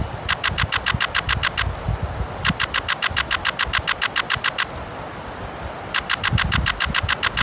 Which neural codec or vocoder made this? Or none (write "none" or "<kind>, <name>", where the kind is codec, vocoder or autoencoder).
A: none